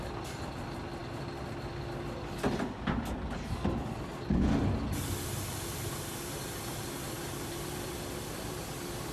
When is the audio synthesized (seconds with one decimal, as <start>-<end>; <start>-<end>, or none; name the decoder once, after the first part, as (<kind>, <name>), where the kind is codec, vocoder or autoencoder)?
7.2-7.9 (vocoder, BigVGAN v2)